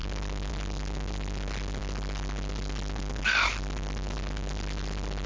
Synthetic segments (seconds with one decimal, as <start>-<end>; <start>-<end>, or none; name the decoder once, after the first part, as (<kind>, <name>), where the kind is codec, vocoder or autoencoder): none